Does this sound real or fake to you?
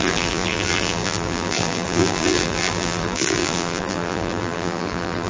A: fake